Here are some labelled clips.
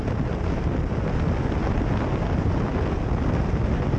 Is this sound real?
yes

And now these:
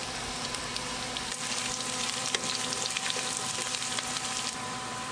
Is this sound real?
no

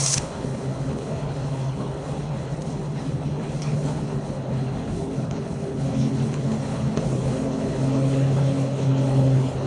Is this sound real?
no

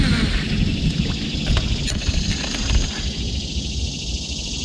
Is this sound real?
yes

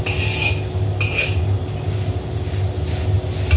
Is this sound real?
yes